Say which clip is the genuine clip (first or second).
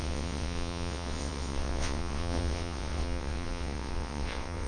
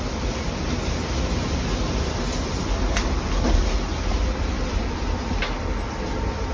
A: second